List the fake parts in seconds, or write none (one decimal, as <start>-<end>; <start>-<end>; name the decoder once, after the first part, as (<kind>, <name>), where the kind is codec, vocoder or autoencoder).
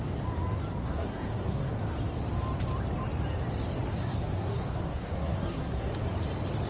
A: 0.8-1.7 (codec, SNAC); 3.9-5.9